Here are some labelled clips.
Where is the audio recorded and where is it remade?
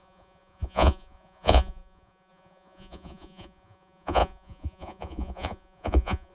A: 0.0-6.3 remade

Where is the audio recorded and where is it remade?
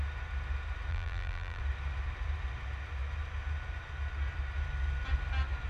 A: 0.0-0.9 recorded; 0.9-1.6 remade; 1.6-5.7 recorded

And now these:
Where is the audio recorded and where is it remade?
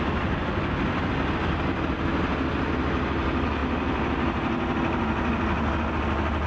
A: 0.0-6.5 recorded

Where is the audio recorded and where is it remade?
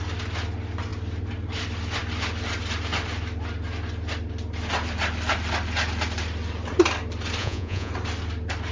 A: 0.0-7.4 recorded; 7.4-7.9 remade; 7.9-8.7 recorded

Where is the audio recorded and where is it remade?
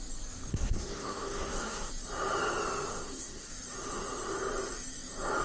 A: 0.0-0.5 recorded; 0.5-1.9 remade; 1.9-2.9 recorded; 2.9-3.5 remade; 3.5-5.4 recorded